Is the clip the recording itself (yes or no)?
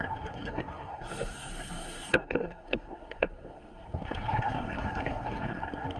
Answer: no